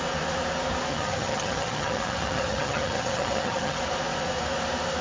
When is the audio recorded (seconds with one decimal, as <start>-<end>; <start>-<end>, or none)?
0.0-0.9; 3.8-5.0